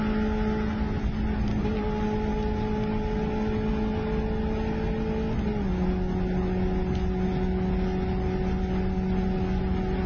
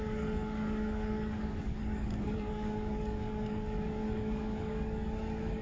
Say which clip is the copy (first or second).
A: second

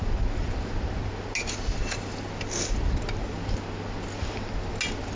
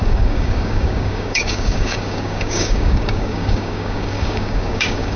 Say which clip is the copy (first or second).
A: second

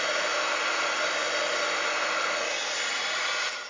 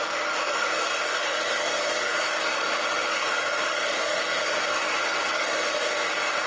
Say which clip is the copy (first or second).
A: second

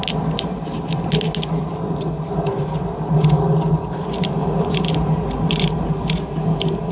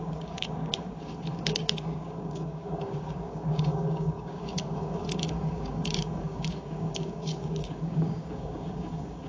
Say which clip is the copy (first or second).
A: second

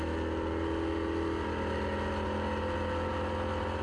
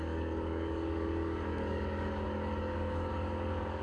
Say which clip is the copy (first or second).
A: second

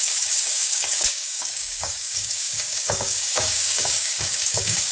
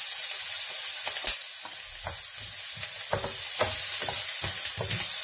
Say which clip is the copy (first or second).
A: first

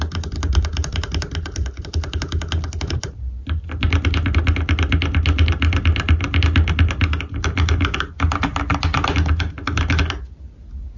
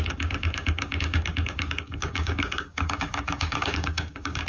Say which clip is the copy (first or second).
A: second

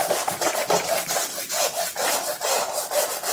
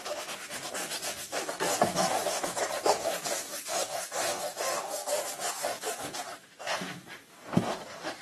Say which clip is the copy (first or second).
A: second